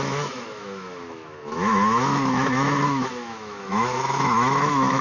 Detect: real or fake fake